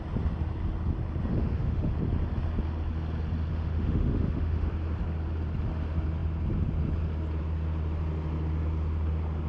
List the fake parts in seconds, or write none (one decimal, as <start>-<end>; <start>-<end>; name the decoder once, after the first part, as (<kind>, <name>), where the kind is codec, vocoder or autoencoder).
1.3-1.9 (autoencoder, DAC-VAE); 3.5-4.7